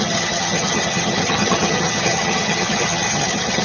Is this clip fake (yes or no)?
yes